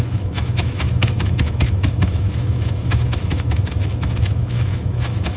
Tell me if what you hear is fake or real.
fake